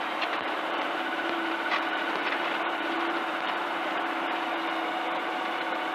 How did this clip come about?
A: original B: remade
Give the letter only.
B